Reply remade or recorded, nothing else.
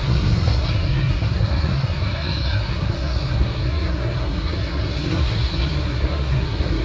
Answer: remade